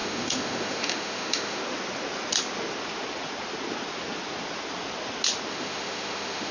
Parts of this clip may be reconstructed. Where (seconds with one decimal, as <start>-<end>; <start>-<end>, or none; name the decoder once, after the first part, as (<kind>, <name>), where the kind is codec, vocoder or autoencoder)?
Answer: 0.0-1.6 (autoencoder, DAC-VAE); 5.5-6.5